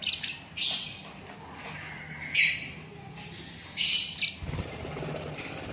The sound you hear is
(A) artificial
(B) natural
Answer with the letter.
B